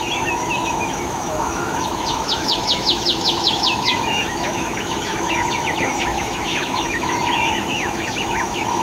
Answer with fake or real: fake